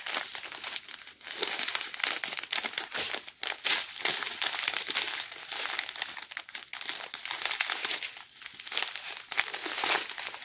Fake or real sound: real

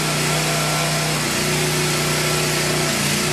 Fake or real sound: real